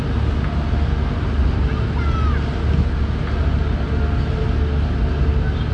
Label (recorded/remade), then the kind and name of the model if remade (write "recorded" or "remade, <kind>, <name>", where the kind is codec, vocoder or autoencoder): recorded